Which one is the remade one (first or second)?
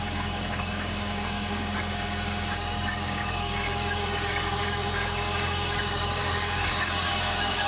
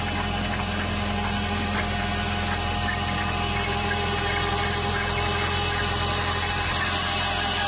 first